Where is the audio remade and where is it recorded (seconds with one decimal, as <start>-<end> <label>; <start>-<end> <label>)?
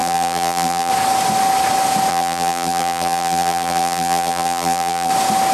0.0-0.9 remade; 0.9-2.1 recorded; 2.1-5.1 remade; 5.1-5.5 recorded